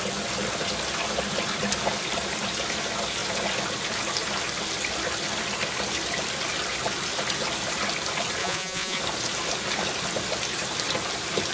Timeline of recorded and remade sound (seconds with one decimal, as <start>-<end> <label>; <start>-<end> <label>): 0.0-8.4 recorded; 8.4-9.0 remade; 9.0-11.5 recorded